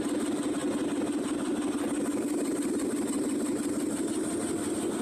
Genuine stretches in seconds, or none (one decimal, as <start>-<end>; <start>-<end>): 0.0-5.0